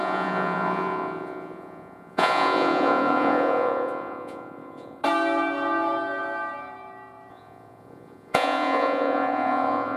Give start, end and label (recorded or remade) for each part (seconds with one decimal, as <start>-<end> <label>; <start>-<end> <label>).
0.0-5.0 remade; 5.0-7.3 recorded; 7.3-10.0 remade